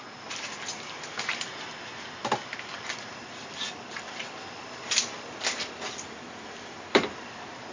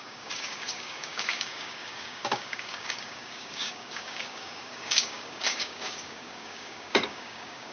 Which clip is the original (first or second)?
first